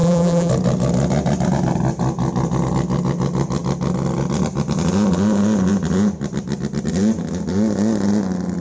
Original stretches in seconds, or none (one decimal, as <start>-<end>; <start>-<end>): 0.5-8.6